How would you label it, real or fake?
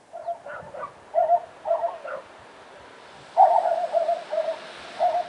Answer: real